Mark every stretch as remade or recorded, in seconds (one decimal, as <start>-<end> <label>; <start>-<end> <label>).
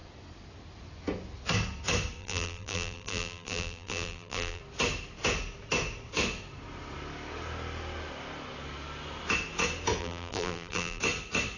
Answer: 0.0-2.2 recorded; 2.2-4.6 remade; 4.6-10.0 recorded; 10.0-11.0 remade; 11.0-11.6 recorded